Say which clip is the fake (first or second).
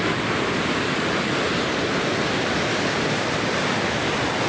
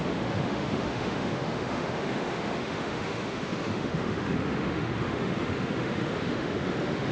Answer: second